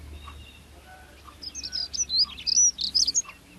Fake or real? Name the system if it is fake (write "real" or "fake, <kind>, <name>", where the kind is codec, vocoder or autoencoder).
real